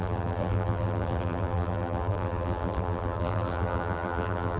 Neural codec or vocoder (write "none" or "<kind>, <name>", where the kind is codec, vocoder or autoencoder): vocoder, BigVGAN v2